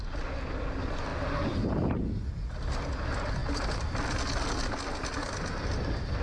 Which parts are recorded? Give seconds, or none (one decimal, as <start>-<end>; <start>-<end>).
0.0-6.2